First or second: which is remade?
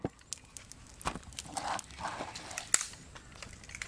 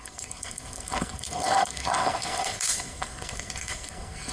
second